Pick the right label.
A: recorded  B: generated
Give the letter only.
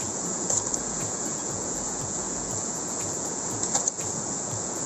B